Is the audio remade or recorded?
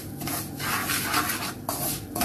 recorded